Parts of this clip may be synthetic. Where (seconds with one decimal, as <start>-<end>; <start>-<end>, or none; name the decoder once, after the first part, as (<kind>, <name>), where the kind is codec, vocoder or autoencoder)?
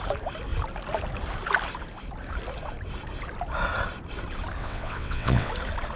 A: 4.6-5.5 (vocoder, WaveNeXt)